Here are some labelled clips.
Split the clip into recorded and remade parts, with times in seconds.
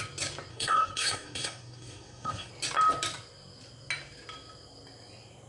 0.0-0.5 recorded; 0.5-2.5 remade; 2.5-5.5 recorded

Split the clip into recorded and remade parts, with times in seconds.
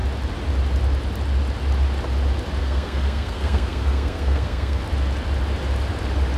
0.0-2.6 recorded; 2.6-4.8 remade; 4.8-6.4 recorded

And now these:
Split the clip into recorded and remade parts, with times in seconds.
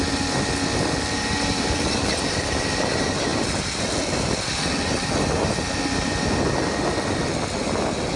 0.0-8.2 recorded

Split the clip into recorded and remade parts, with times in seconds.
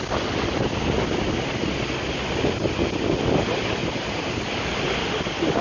0.0-5.6 recorded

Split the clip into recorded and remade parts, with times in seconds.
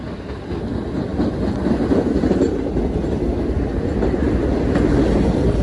0.0-5.6 recorded